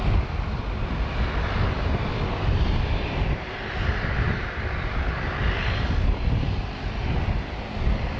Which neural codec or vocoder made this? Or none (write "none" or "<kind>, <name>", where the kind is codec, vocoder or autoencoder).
none